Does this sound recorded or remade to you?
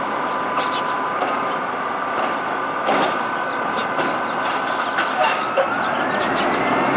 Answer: recorded